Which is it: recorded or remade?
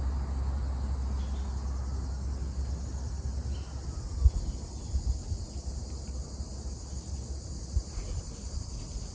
recorded